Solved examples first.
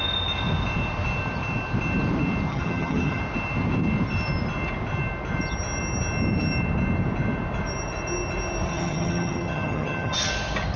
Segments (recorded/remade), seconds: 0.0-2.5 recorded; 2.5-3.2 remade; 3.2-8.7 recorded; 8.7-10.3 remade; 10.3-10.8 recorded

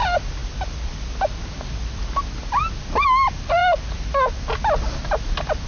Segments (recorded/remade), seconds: 0.0-5.7 recorded

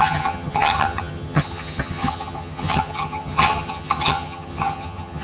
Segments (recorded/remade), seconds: 0.0-5.2 remade

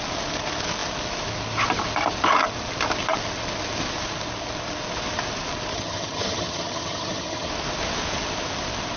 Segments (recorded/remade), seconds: 0.0-5.7 recorded; 5.7-7.5 remade; 7.5-9.0 recorded

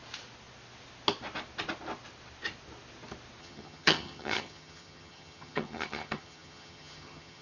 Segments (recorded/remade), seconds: 0.0-3.4 recorded; 3.4-7.4 remade

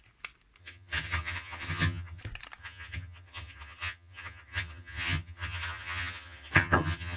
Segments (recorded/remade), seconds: 0.0-0.6 recorded; 0.6-2.2 remade; 2.2-2.6 recorded; 2.6-7.2 remade

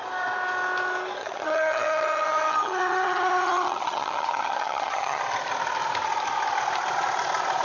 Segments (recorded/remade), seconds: 0.0-1.2 recorded; 1.2-5.2 remade; 5.2-7.6 recorded